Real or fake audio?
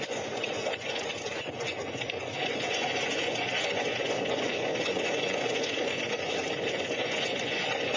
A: fake